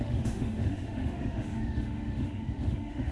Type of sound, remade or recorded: remade